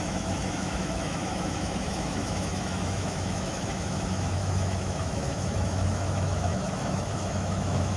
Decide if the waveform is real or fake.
fake